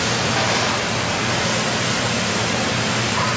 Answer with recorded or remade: recorded